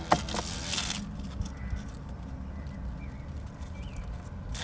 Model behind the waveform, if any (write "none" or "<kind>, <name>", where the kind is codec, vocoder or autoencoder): none